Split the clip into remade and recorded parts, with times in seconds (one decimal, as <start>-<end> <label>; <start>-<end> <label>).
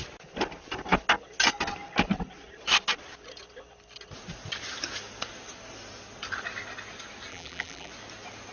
0.0-7.3 recorded; 7.3-7.9 remade; 7.9-8.5 recorded